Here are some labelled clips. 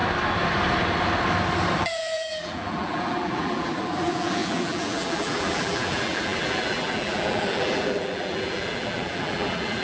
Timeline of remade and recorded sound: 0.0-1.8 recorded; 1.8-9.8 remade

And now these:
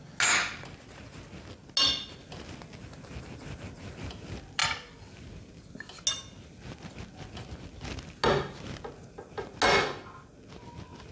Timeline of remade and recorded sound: 0.0-11.1 recorded

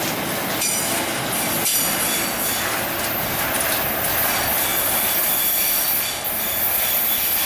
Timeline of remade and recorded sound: 0.0-7.5 recorded

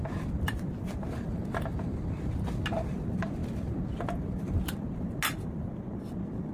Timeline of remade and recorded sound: 0.0-6.5 recorded

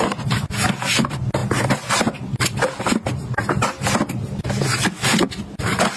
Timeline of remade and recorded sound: 0.0-6.0 recorded

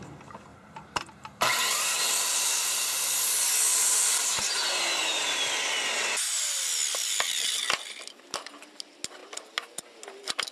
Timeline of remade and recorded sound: 0.0-0.5 recorded; 0.5-3.0 remade; 3.0-3.7 recorded; 3.7-4.3 remade; 4.3-10.5 recorded